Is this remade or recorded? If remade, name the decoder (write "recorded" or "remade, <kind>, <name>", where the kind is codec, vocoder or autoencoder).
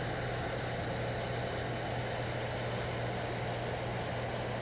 recorded